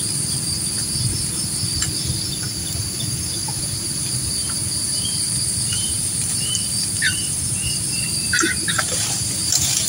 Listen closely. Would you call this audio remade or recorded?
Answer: remade